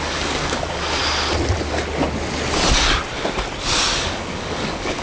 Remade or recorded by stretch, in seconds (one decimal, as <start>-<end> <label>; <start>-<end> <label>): 0.0-1.0 remade; 1.0-4.0 recorded; 4.0-5.0 remade